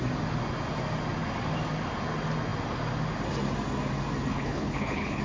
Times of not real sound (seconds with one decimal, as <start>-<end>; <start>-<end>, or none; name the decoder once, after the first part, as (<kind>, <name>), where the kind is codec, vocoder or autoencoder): 4.3-5.2 (codec, HILCodec)